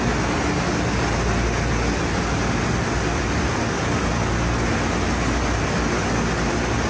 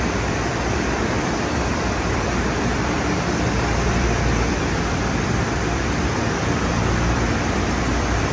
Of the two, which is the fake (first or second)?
second